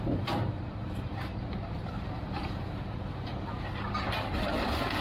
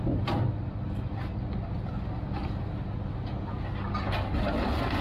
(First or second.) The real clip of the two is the second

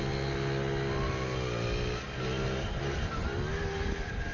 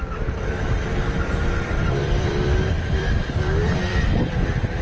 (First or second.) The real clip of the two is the first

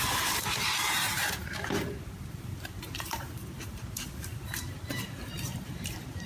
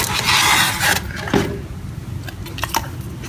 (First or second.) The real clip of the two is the second